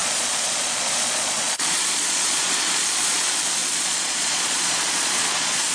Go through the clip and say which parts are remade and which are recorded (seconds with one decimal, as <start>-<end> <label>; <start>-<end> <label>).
0.0-5.7 remade